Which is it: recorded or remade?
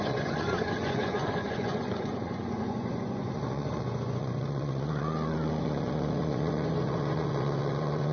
remade